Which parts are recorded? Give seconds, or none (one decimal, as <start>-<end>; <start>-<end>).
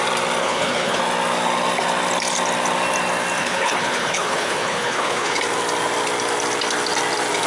0.0-0.4; 1.0-3.4; 5.4-7.5